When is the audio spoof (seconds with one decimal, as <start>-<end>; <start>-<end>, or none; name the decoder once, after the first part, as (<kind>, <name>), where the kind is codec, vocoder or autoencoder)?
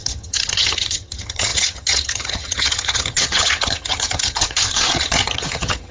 0.0-5.9 (vocoder, HiFi-GAN)